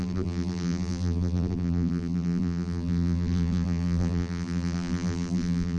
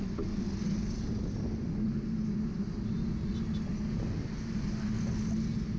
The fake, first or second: first